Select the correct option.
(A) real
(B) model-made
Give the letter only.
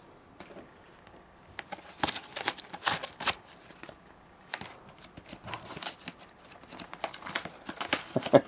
A